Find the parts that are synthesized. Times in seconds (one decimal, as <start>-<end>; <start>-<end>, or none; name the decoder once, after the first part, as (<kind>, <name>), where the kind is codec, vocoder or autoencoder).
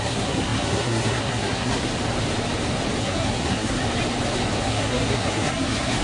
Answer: 0.0-1.9 (codec, SNAC); 3.0-3.8; 4.6-6.0